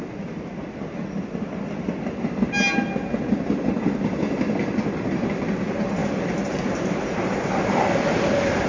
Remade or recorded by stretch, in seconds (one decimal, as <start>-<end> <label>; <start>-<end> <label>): 0.0-6.0 recorded; 6.0-8.7 remade